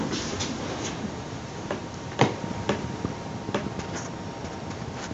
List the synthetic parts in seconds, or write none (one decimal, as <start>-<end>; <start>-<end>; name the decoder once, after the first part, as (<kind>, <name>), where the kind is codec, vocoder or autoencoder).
1.8-3.4 (vocoder, BigVGAN v2)